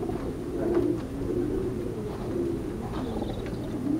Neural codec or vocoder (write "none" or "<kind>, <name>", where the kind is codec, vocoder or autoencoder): none